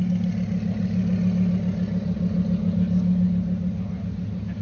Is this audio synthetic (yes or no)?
no